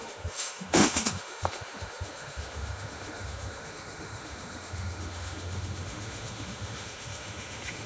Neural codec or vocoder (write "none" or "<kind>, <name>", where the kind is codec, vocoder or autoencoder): autoencoder, DAC-VAE